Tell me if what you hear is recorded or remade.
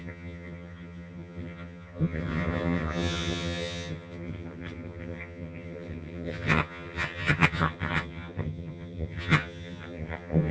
remade